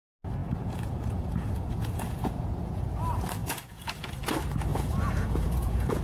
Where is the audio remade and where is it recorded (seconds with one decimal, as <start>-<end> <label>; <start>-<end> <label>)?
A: 0.0-0.4 recorded; 0.4-2.8 remade; 2.8-3.4 recorded; 3.4-4.1 remade; 4.1-4.7 recorded; 4.7-6.0 remade